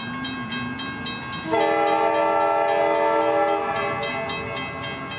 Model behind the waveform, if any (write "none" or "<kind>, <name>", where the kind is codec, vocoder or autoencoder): none